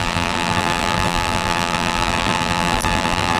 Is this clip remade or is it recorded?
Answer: remade